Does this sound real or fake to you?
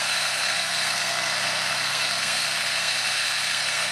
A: fake